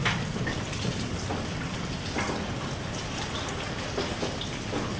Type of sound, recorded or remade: recorded